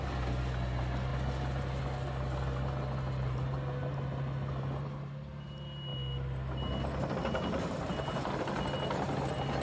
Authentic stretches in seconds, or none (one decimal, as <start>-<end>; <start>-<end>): 0.0-9.6